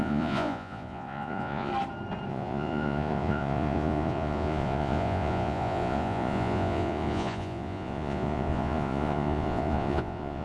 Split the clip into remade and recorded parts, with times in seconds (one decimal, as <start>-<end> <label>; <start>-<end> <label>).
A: 0.0-1.7 remade; 1.7-2.3 recorded; 2.3-10.4 remade